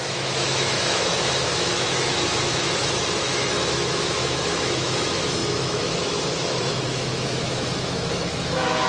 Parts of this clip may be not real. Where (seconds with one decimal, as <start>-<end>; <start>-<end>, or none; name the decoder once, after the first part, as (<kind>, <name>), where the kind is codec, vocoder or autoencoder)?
0.0-8.9 (autoencoder, DAC-VAE)